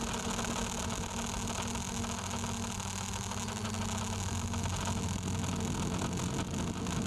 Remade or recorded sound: recorded